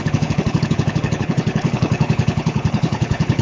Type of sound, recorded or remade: remade